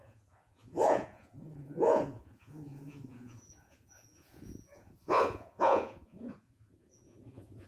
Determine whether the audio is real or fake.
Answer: fake